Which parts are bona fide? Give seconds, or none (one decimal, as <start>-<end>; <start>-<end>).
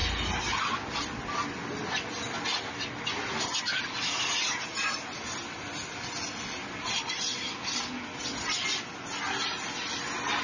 0.0-10.4